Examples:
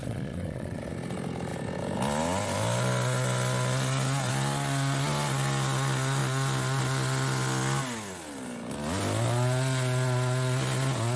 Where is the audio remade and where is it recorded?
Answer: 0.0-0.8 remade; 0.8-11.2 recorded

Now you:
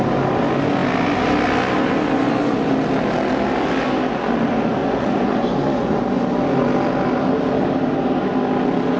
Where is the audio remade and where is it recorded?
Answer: 0.0-4.8 recorded; 4.8-6.0 remade; 6.0-9.0 recorded